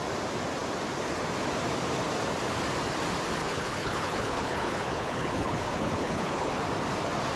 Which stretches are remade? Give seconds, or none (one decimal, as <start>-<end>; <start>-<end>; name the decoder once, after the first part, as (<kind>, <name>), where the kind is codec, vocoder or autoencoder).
3.4-6.5 (codec, HILCodec)